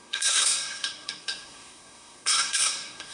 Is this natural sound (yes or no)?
no